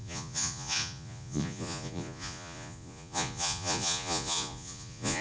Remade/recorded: remade